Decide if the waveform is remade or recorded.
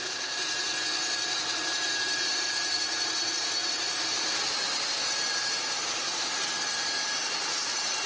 remade